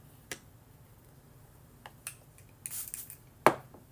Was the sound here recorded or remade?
recorded